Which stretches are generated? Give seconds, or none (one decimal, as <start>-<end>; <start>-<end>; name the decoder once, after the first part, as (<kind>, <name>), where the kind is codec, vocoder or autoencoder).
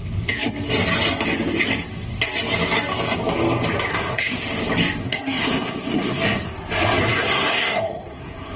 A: 3.9-4.4 (codec, SNAC); 5.0-6.5; 7.0-8.6